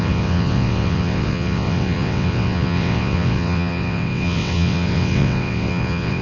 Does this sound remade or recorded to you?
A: remade